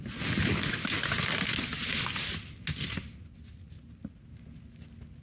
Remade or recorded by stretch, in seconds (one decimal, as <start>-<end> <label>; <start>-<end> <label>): 0.0-5.2 recorded